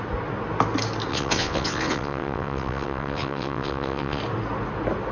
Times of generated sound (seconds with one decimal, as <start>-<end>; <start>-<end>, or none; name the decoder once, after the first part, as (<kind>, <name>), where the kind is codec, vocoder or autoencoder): 1.1-4.2 (vocoder, WaveNeXt)